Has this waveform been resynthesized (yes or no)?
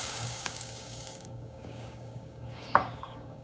yes